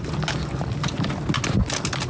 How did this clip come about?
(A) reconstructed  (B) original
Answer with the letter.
B